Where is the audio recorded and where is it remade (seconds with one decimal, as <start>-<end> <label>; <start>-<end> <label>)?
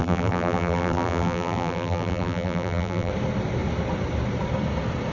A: 0.0-3.1 remade; 3.1-5.1 recorded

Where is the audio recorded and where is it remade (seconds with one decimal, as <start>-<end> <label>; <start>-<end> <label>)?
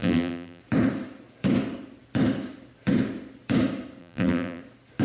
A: 0.0-0.6 remade; 0.6-4.0 recorded; 4.0-4.6 remade; 4.6-5.0 recorded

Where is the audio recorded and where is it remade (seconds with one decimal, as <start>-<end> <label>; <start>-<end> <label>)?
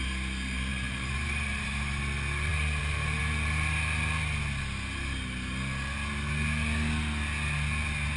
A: 0.0-0.7 recorded; 0.7-1.8 remade; 1.8-2.5 recorded; 2.5-3.2 remade; 3.2-8.2 recorded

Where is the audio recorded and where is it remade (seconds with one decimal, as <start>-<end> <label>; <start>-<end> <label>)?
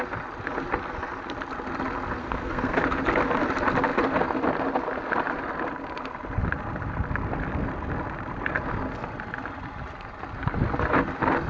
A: 0.0-2.2 recorded; 2.2-2.8 remade; 2.8-11.5 recorded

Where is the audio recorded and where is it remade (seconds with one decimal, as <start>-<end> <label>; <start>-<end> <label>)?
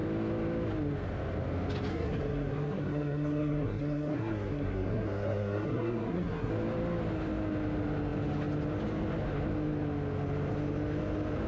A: 0.0-1.9 recorded; 1.9-6.5 remade; 6.5-11.5 recorded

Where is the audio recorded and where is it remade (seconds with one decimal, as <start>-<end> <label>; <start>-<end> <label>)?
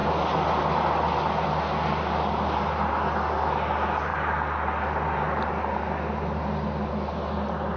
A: 0.0-7.8 recorded